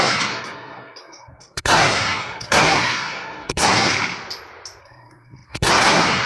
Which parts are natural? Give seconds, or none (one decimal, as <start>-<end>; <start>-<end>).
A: 3.9-4.8